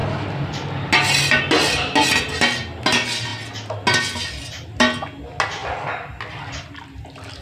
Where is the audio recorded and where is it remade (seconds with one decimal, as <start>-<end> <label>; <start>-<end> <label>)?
0.0-7.4 recorded